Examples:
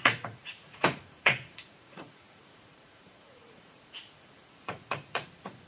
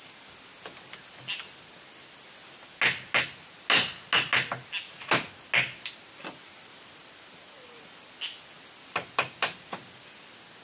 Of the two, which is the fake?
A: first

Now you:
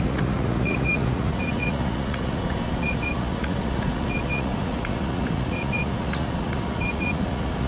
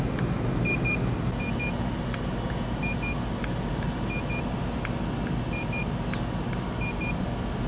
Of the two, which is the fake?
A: first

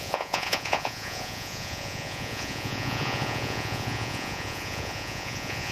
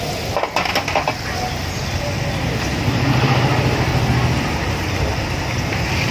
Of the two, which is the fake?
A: first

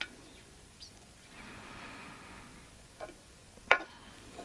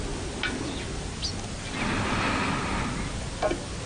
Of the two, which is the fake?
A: first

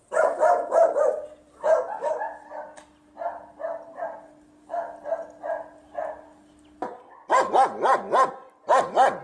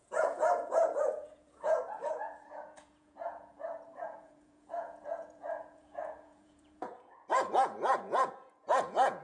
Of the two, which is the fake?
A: second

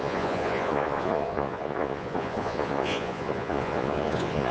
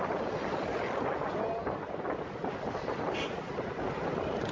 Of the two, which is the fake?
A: first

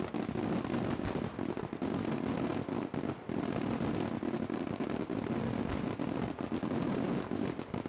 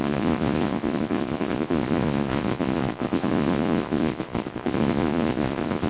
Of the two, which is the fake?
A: second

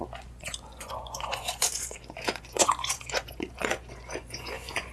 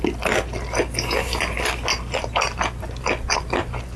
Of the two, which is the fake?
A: first